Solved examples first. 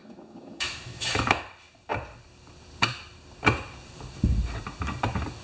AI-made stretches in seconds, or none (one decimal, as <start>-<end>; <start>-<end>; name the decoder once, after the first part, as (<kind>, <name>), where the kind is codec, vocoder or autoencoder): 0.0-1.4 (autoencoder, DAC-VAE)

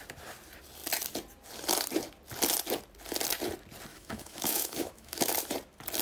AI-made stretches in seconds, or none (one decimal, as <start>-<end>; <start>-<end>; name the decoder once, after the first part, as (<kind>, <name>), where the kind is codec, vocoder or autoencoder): 3.9-5.4 (autoencoder, DAC-VAE)

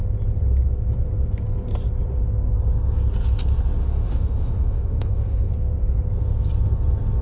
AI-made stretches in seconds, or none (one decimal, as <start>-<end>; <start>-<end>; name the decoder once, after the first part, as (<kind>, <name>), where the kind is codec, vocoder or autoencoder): 3.8-5.5 (autoencoder, DAC-VAE)

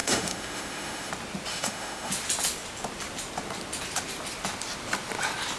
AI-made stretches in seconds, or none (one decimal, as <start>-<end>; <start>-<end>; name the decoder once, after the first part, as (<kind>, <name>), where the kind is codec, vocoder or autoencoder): 0.0-1.1 (autoencoder, DAC-VAE); 1.5-2.1

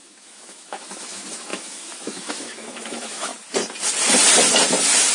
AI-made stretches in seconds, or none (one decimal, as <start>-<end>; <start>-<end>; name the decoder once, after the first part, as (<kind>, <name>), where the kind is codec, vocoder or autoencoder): 0.0-3.3 (autoencoder, DAC-VAE)

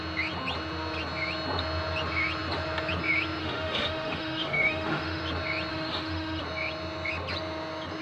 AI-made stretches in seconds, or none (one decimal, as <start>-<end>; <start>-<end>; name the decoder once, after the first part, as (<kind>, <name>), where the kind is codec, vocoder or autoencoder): 3.4-5.2 (autoencoder, DAC-VAE); 5.7-6.4

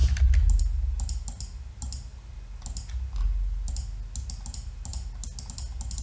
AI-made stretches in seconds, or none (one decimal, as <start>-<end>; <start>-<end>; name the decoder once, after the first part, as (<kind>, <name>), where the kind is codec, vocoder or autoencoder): none

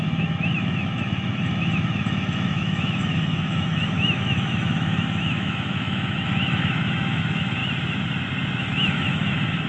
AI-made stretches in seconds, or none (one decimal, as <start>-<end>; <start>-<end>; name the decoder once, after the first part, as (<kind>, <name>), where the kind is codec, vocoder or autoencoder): 0.0-7.6 (autoencoder, DAC-VAE); 8.6-9.7